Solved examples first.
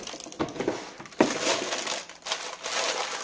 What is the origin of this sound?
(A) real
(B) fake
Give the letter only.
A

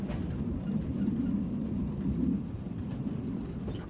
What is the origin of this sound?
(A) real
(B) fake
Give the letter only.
A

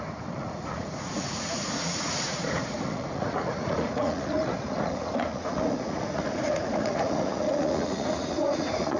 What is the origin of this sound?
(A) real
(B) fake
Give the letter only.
B